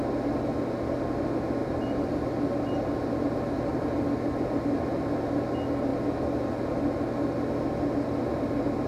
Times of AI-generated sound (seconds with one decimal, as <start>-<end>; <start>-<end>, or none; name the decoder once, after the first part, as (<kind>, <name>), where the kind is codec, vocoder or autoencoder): 1.6-2.4 (vocoder, BigVGAN v2); 3.7-5.4